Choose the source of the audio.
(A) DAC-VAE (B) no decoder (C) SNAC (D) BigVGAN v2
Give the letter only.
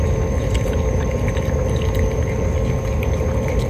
B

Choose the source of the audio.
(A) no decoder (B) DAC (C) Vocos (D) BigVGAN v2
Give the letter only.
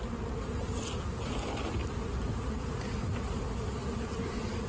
A